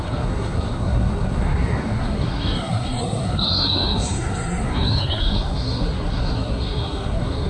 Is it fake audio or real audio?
fake